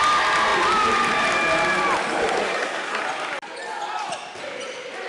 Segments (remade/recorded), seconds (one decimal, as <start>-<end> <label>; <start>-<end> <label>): 0.0-2.4 recorded; 2.4-3.0 remade; 3.0-5.1 recorded